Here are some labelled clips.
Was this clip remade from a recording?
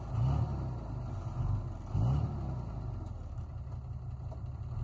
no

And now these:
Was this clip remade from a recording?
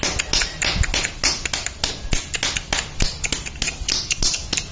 no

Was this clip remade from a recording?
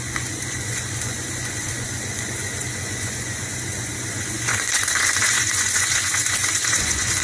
yes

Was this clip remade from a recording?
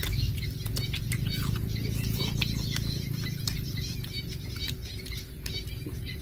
no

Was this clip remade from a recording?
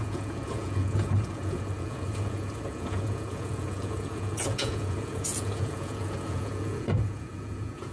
yes